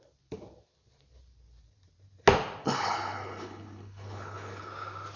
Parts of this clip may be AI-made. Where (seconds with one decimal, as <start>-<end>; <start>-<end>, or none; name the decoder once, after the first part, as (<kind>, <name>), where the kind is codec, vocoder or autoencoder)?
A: 2.6-4.7 (codec, HILCodec)